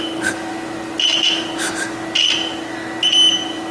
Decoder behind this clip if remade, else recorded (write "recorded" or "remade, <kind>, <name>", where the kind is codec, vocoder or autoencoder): recorded